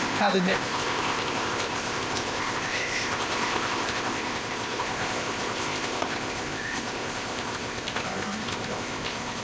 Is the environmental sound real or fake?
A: fake